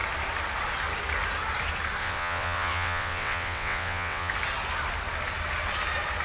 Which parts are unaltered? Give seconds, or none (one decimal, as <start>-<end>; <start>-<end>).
0.0-2.0; 4.3-6.2